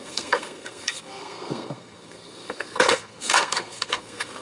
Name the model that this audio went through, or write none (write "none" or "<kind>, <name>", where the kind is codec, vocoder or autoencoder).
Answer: codec, SNAC